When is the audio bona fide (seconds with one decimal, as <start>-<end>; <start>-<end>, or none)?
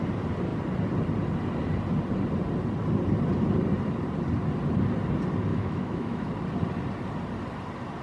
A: 0.0-5.5; 6.3-8.0